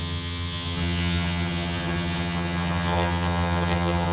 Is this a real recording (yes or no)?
no